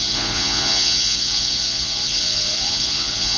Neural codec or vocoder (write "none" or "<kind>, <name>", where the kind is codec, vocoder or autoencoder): vocoder, Vocos